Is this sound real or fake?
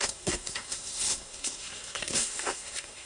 fake